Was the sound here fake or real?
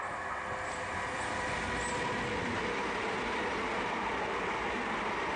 real